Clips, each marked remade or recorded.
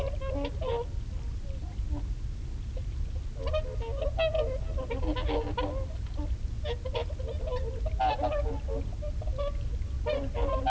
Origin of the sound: recorded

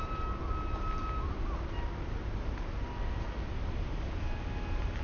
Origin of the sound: recorded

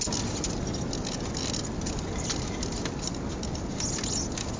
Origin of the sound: recorded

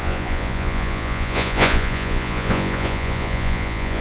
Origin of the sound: remade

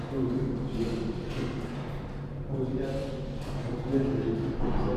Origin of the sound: recorded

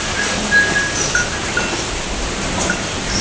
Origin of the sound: recorded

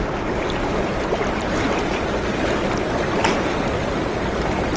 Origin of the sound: recorded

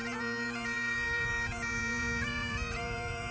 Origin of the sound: remade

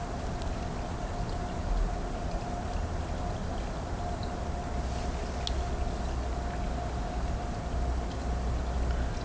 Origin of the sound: recorded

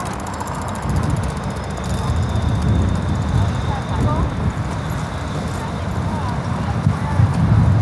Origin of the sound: recorded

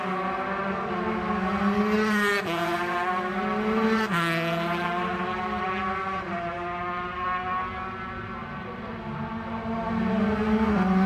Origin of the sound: recorded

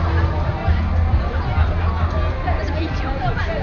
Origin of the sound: recorded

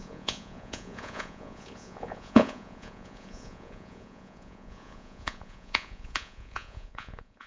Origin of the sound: remade